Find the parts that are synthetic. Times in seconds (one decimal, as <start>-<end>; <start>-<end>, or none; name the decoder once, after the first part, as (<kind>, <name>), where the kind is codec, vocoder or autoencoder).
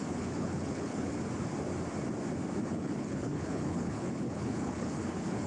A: 0.0-1.1 (codec, HILCodec); 2.6-5.5